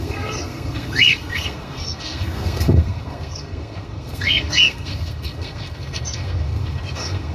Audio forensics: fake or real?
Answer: fake